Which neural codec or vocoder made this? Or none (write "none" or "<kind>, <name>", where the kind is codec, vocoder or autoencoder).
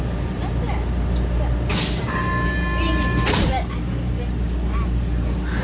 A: none